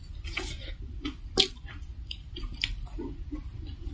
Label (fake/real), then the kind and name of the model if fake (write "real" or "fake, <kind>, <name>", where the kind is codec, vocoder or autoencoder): real